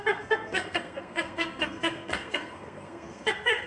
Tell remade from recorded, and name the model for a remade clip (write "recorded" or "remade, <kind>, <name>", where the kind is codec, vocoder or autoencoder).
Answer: remade, codec, SNAC